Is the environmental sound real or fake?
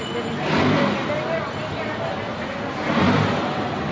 real